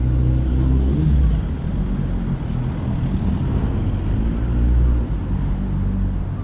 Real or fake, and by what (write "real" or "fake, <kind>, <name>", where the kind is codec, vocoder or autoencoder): real